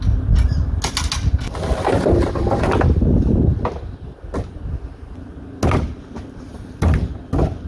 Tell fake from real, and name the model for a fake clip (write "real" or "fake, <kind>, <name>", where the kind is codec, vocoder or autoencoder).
real